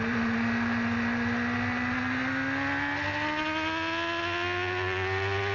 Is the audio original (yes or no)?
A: yes